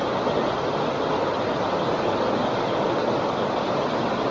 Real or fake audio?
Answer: real